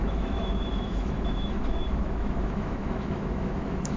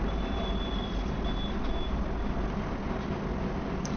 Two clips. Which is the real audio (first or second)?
second